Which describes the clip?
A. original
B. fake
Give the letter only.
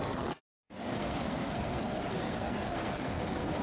B